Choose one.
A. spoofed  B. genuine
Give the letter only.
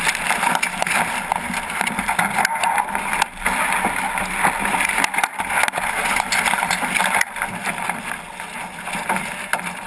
B